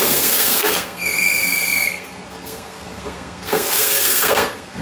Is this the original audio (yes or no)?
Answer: no